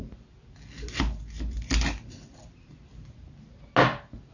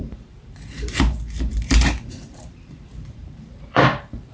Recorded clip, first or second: first